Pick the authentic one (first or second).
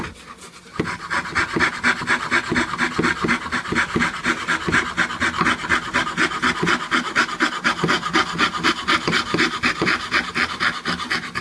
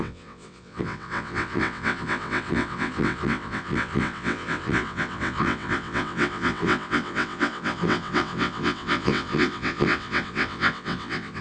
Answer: first